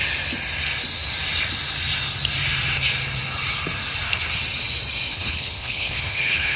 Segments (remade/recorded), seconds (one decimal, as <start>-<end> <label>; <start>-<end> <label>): 0.0-5.1 recorded; 5.1-6.6 remade